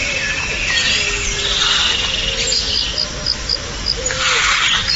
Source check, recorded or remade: recorded